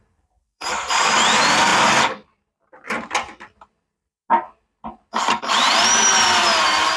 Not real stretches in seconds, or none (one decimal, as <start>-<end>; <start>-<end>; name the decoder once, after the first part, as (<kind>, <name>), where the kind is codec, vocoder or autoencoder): 0.0-1.7 (vocoder, BigVGAN v2); 5.4-7.0